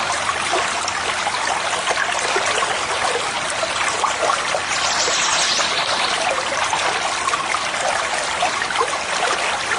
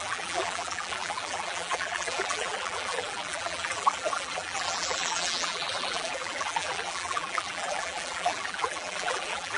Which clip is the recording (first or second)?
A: first